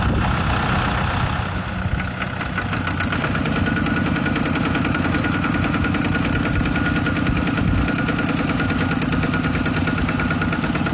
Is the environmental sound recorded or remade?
recorded